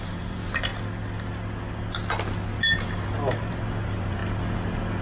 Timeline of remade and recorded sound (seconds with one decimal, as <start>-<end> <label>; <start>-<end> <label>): 0.0-0.7 remade; 0.7-3.7 recorded; 3.7-4.2 remade; 4.2-5.0 recorded